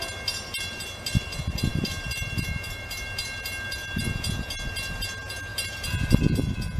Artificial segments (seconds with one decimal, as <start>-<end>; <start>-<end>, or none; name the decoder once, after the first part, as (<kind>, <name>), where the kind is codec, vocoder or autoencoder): 5.5-6.2 (vocoder, BigVGAN v2)